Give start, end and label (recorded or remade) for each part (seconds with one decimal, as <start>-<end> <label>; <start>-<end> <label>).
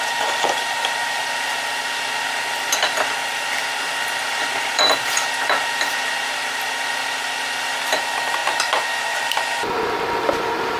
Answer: 0.0-8.4 remade; 8.4-10.0 recorded; 10.0-10.8 remade